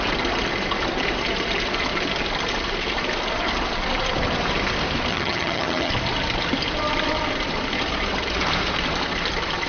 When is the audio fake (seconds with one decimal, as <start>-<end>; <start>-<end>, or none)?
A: 5.1-5.9